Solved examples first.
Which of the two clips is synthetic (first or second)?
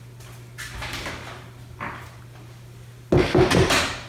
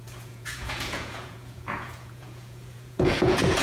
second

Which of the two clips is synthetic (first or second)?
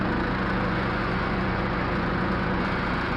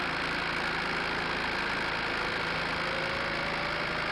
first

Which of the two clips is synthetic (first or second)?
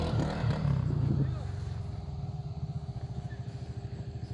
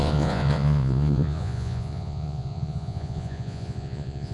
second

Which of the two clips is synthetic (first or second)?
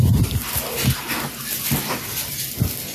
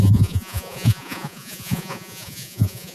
second